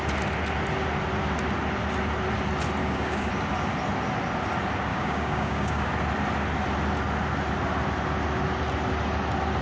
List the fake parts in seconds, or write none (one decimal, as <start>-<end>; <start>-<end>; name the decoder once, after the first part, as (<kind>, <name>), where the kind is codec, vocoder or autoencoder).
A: 2.8-3.3 (codec, DAC); 4.9-5.9